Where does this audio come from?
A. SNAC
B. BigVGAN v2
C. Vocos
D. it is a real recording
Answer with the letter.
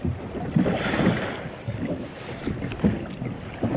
D